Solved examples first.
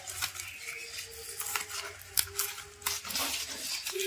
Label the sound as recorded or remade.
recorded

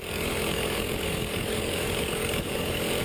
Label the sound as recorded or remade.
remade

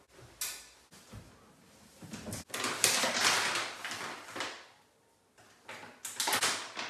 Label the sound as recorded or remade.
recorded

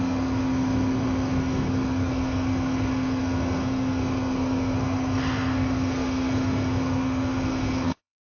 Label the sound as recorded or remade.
remade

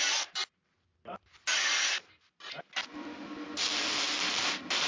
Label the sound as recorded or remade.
recorded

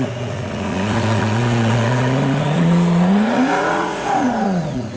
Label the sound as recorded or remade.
remade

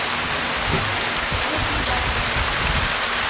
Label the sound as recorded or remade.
recorded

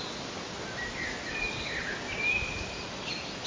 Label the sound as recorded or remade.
recorded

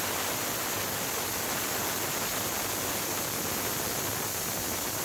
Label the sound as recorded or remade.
recorded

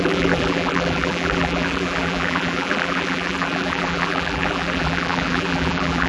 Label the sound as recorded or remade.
remade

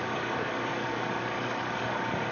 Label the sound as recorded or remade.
remade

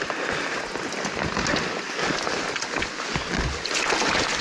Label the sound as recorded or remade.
recorded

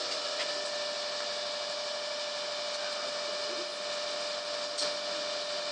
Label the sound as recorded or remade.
recorded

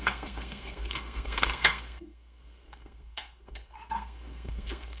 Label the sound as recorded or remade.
remade